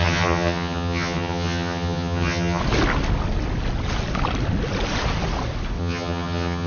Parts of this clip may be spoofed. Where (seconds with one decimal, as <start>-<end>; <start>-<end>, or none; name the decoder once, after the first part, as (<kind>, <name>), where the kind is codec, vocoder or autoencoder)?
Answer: 0.0-2.6 (vocoder, HiFi-GAN); 5.8-6.7